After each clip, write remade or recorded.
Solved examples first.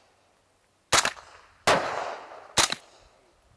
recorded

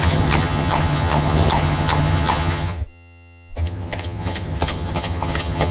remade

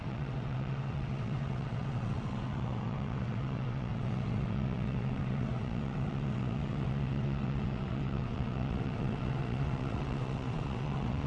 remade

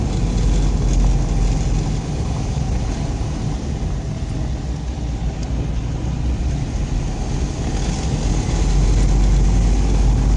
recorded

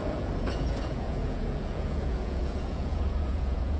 remade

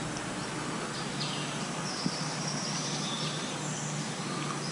recorded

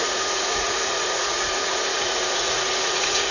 remade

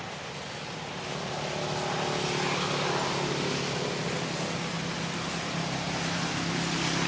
recorded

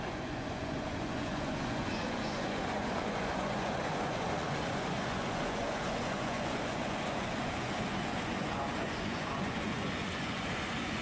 remade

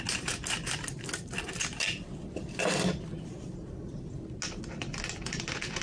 recorded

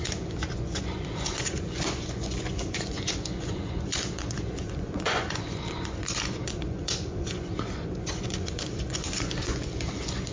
remade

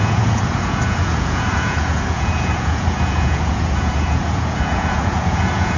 remade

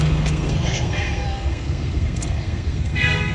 remade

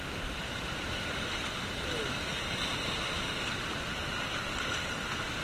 recorded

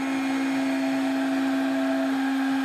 recorded